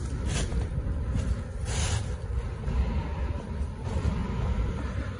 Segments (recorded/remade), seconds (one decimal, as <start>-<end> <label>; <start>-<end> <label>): 0.0-0.5 remade; 0.5-3.6 recorded; 3.6-4.2 remade; 4.2-4.7 recorded; 4.7-5.2 remade